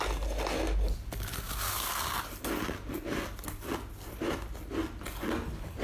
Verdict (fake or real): real